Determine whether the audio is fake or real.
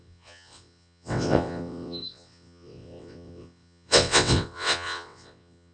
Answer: fake